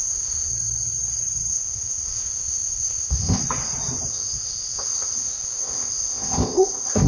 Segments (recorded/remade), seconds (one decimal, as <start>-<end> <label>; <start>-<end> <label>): 0.0-0.5 remade; 0.5-1.5 recorded; 1.5-3.4 remade; 3.4-4.1 recorded; 4.1-7.1 remade